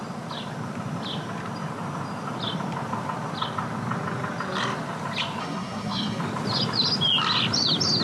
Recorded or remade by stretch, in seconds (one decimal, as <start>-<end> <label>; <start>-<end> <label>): 0.0-5.4 recorded; 5.4-6.2 remade; 6.2-8.0 recorded